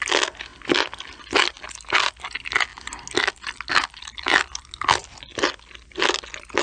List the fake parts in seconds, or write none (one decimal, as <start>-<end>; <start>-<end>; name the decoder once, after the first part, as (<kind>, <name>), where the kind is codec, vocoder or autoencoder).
none